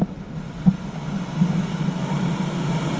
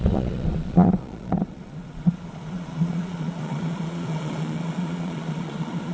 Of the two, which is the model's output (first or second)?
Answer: second